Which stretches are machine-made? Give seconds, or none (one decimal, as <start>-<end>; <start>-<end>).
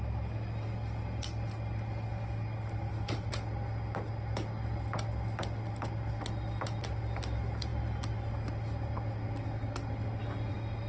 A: none